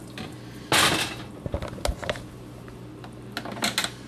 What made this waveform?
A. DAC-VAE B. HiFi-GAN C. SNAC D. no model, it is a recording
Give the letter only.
D